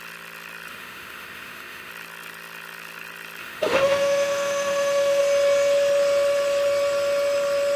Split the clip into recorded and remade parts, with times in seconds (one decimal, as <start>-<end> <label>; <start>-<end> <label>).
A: 0.0-0.7 recorded; 0.7-1.9 remade; 1.9-3.4 recorded; 3.4-5.2 remade; 5.2-7.8 recorded